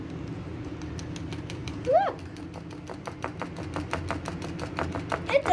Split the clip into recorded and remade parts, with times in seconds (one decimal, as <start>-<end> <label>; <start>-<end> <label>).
0.0-5.5 recorded